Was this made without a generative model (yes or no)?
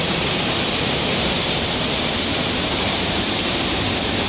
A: no